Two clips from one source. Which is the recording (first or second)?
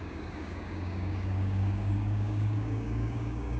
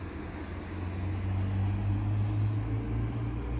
second